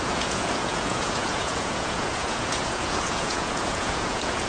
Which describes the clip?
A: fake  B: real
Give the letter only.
A